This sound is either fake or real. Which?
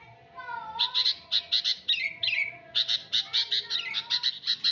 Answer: real